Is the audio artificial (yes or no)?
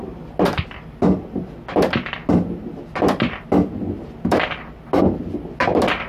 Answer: no